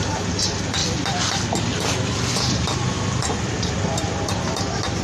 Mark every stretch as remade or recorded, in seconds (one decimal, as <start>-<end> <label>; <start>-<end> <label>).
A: 0.0-5.0 recorded

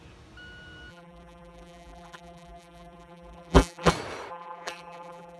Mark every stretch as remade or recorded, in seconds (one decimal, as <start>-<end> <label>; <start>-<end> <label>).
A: 0.0-0.9 recorded; 0.9-3.9 remade; 3.9-4.3 recorded; 4.3-5.4 remade